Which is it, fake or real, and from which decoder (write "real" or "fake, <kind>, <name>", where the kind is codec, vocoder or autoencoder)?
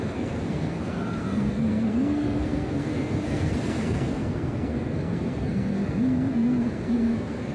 fake, codec, SNAC